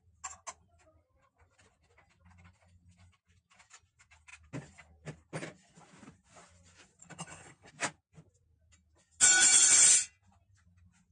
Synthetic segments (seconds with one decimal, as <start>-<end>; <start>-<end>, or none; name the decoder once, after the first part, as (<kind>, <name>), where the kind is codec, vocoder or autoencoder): 7.0-7.7 (codec, HILCodec)